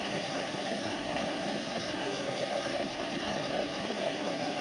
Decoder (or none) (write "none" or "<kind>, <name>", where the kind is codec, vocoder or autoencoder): codec, SNAC